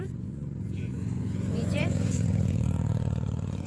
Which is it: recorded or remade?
remade